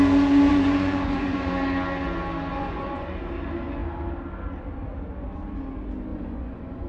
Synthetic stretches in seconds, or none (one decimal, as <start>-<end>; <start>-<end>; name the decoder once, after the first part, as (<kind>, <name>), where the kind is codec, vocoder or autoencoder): 0.5-1.5 (vocoder, Vocos); 2.5-3.1; 6.1-6.9